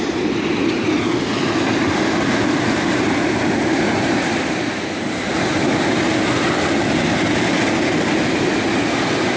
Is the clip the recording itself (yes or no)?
yes